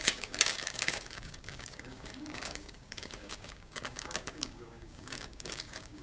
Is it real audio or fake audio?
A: fake